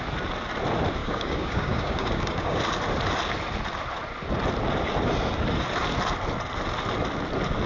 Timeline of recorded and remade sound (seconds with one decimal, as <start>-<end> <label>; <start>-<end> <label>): 0.0-1.0 recorded; 1.0-2.6 remade; 2.6-7.7 recorded